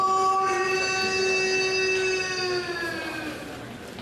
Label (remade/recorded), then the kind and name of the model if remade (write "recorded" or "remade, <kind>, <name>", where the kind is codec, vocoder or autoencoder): recorded